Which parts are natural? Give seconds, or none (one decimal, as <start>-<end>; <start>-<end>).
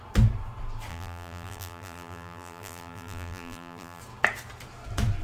0.0-0.9; 4.0-5.2